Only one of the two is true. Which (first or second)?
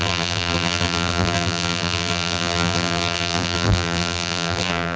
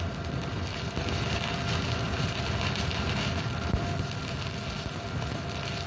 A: second